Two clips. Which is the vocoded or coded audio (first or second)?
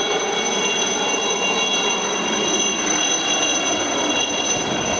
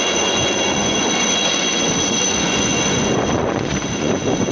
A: second